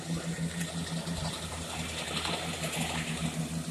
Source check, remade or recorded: remade